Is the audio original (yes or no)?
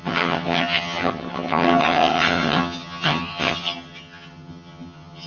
no